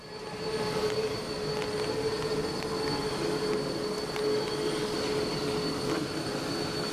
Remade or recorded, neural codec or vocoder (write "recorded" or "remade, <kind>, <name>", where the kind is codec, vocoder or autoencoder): recorded